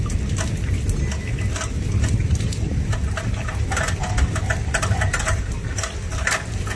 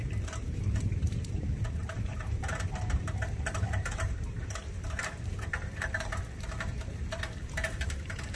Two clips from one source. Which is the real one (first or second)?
first